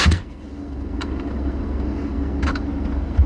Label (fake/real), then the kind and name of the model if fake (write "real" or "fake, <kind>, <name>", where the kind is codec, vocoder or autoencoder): fake, codec, SNAC